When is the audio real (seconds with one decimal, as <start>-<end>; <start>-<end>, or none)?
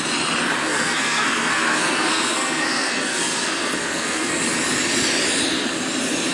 0.0-0.6; 4.4-6.3